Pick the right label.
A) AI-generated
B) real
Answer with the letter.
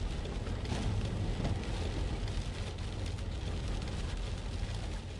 B